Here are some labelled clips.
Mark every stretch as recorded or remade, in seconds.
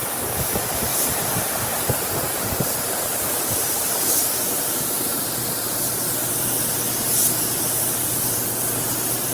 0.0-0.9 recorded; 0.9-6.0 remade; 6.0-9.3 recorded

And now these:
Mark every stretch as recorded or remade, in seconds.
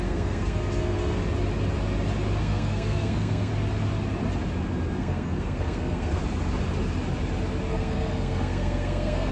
0.0-1.2 remade; 1.2-2.4 recorded; 2.4-3.5 remade; 3.5-5.0 recorded; 5.0-6.2 remade; 6.2-7.7 recorded; 7.7-9.3 remade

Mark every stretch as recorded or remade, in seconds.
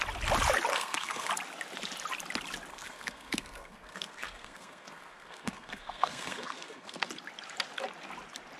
0.0-0.7 recorded; 0.7-1.3 remade; 1.3-2.7 recorded; 2.7-7.1 remade; 7.1-8.6 recorded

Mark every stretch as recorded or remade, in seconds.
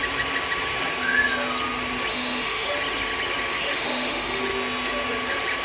0.0-2.1 recorded; 2.1-2.7 remade; 2.7-3.5 recorded; 3.5-4.4 remade; 4.4-5.6 recorded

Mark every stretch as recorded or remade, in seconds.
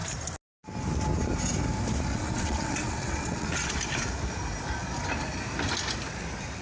0.0-2.1 recorded; 2.1-3.7 remade; 3.7-6.6 recorded